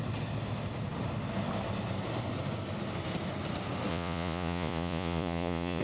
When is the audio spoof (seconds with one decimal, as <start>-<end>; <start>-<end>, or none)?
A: 3.9-5.8